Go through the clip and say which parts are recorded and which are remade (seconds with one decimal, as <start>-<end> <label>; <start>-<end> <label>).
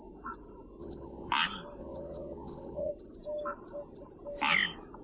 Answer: 0.0-0.8 recorded; 0.8-1.3 remade; 1.3-1.8 recorded; 1.8-2.9 remade; 2.9-5.0 recorded